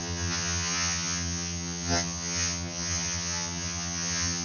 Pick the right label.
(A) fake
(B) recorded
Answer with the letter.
A